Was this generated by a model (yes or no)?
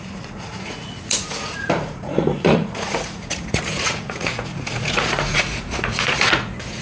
yes